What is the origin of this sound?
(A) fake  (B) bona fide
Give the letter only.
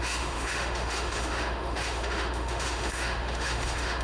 A